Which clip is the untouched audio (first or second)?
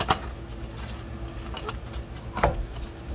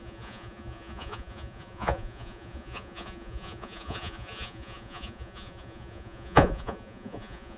first